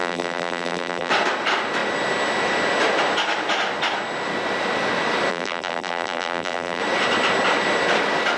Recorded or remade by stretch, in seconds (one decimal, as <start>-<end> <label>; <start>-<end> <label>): 0.0-1.1 remade; 1.1-5.3 recorded; 5.3-6.8 remade; 6.8-8.4 recorded